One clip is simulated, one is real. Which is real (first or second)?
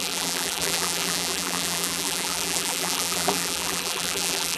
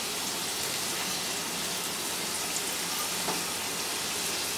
second